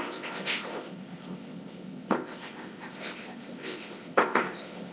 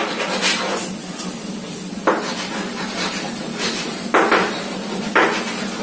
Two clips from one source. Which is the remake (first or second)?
first